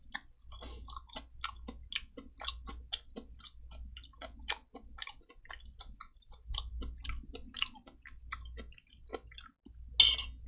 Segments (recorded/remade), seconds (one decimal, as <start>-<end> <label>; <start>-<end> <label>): 0.0-10.5 recorded